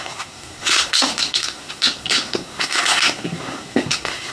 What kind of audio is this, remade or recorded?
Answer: remade